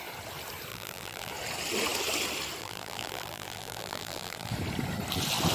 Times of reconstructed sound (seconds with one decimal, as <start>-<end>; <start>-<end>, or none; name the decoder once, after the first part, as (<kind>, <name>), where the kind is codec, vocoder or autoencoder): 0.7-1.3 (vocoder, BigVGAN v2); 2.6-4.5